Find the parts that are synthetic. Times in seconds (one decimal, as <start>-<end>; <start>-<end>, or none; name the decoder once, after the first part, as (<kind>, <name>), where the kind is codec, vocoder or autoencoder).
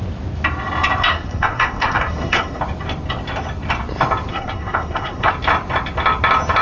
1.1-2.6 (codec, SNAC); 4.3-5.3